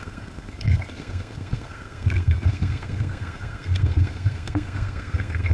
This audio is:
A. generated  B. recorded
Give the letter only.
A